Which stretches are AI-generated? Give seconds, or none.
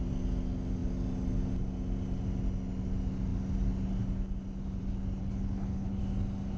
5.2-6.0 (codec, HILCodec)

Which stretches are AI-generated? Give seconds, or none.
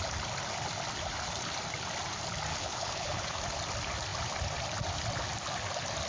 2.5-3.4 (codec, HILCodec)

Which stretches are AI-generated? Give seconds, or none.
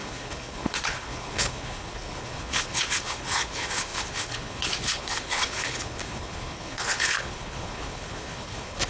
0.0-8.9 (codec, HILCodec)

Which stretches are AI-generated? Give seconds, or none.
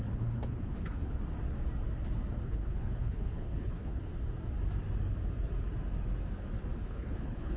0.0-1.2 (codec, HILCodec); 2.3-4.1; 6.8-7.6